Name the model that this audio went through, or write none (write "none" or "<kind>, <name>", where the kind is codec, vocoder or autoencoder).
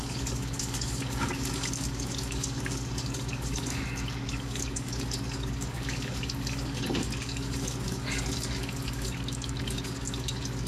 codec, DAC